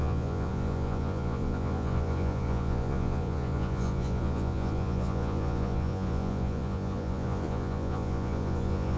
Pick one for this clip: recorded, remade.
remade